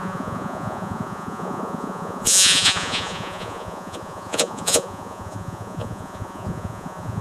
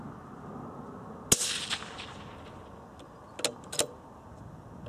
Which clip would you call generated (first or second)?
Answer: first